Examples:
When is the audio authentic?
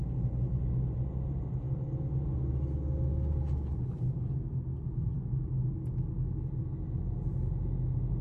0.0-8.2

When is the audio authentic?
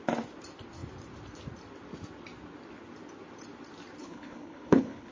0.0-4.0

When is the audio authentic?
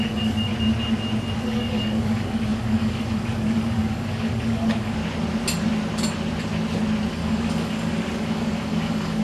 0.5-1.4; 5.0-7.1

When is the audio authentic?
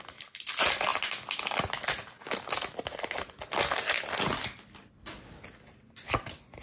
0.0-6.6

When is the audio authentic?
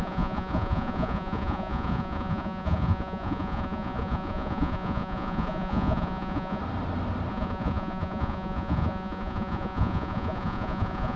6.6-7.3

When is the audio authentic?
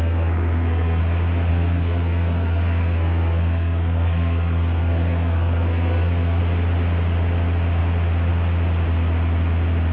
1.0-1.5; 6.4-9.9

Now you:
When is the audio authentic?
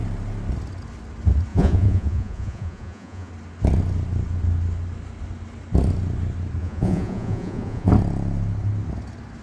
0.0-1.5; 3.3-6.6; 7.9-9.4